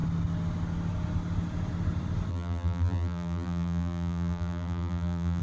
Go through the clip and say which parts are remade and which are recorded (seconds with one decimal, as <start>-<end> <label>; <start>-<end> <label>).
0.0-2.3 recorded; 2.3-5.4 remade